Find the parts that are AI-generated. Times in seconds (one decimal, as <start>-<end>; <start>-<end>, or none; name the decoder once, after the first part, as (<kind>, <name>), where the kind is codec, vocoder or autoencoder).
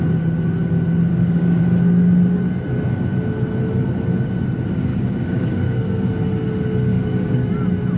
1.1-1.6 (codec, DAC); 4.9-6.1; 6.9-7.5